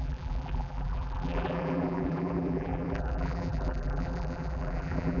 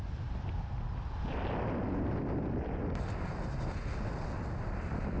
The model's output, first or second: first